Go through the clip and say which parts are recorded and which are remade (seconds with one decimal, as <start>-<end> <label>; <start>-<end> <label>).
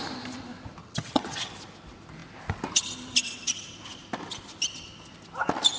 0.0-0.8 recorded; 0.8-1.5 remade; 1.5-5.8 recorded